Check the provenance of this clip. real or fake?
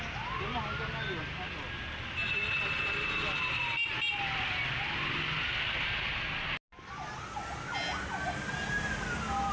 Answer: real